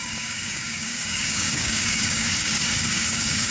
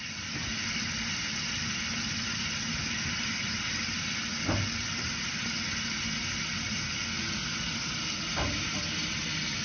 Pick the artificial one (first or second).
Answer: first